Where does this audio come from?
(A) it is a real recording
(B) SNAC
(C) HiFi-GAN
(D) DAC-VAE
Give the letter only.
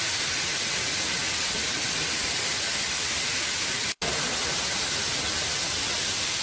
A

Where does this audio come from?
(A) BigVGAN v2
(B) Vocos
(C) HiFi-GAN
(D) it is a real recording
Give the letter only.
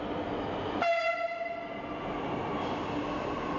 D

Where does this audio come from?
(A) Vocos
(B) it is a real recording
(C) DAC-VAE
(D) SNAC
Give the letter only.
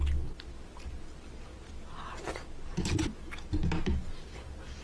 B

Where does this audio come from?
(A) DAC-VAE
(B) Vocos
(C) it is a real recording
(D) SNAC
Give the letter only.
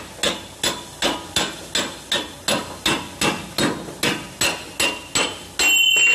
C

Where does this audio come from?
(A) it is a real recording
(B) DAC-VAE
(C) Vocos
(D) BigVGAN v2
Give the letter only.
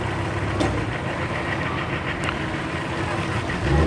A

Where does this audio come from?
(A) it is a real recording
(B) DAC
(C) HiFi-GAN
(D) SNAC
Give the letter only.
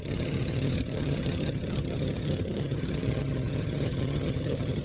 C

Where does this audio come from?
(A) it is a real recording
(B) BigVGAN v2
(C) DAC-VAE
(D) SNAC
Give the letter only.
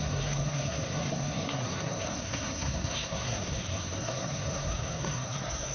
D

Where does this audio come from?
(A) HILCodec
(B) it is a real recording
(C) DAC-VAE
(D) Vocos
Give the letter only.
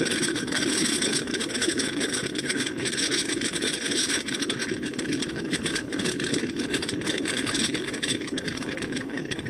A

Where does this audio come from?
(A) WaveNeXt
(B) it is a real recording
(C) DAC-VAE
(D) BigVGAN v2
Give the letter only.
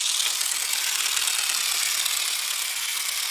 B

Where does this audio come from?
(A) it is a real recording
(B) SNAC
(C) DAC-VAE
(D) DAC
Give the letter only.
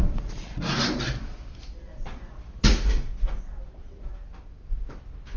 A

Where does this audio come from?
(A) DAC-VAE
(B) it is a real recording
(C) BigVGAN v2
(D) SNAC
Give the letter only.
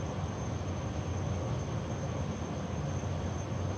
B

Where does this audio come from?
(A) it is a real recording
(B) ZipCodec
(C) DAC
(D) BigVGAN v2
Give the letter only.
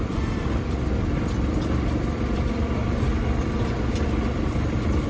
D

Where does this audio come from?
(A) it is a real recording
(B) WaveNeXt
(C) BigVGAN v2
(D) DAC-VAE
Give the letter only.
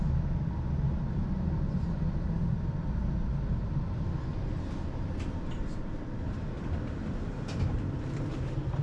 A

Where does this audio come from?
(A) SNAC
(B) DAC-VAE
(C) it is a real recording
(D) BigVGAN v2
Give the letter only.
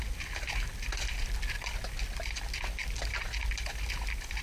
C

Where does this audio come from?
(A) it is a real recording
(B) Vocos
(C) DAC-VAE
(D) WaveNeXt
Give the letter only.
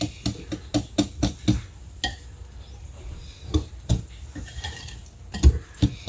A